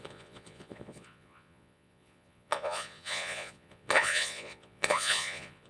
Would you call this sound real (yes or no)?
no